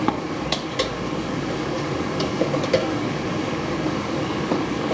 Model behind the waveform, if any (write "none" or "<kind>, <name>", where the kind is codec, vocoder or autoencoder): codec, DAC